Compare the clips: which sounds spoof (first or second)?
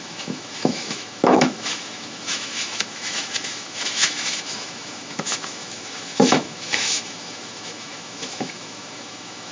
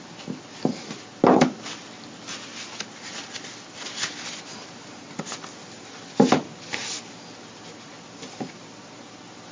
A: first